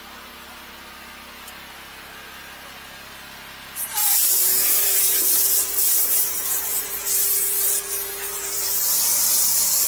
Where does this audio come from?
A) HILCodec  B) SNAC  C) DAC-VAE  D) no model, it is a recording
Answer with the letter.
D